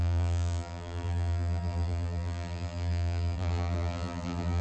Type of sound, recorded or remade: remade